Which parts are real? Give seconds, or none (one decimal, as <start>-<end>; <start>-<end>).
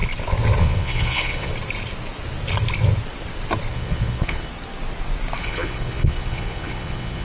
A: 0.0-0.6; 1.5-3.7; 4.5-5.4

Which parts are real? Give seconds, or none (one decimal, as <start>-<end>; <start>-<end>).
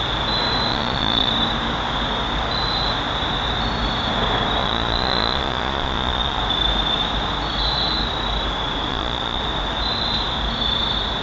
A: 0.0-0.7; 1.3-4.6; 6.4-8.9; 9.4-11.2